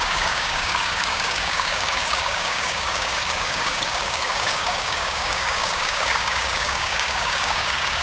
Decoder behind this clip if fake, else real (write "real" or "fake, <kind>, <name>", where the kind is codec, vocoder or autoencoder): fake, codec, DAC